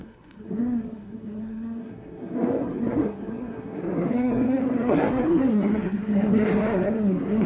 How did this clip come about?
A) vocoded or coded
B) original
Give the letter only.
A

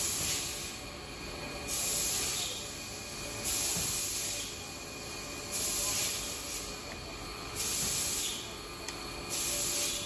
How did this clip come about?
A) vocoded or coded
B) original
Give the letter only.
B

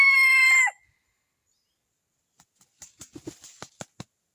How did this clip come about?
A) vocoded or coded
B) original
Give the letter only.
B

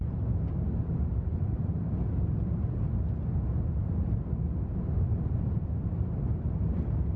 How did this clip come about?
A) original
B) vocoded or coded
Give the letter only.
A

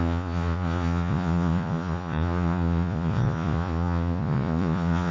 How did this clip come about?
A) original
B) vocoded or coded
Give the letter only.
B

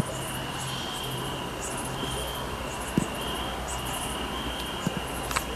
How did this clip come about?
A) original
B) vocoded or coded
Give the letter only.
A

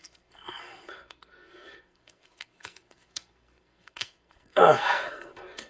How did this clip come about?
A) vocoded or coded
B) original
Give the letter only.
A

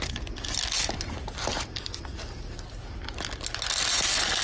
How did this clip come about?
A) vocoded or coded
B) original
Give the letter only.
B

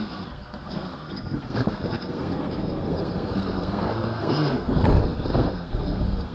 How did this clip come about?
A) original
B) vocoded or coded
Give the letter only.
B